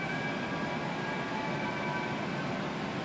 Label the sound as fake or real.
real